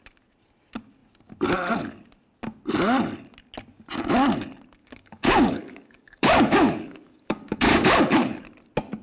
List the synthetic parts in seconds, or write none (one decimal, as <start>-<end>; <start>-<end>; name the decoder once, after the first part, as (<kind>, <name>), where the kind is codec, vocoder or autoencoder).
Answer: 4.8-8.4 (codec, DAC)